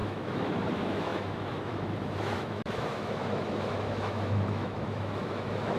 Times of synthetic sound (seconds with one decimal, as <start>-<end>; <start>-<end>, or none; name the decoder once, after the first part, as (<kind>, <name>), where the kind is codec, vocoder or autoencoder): 0.0-5.8 (autoencoder, DAC-VAE)